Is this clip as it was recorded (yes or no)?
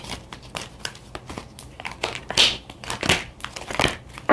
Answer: yes